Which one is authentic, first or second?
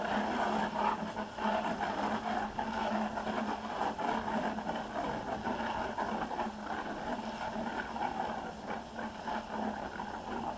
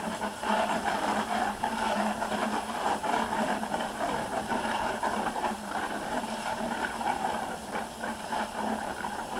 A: first